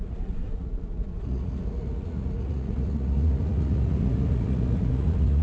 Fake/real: fake